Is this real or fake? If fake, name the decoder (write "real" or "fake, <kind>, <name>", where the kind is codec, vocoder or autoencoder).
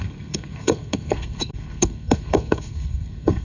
fake, codec, SNAC